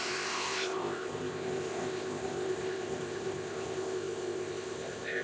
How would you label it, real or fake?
fake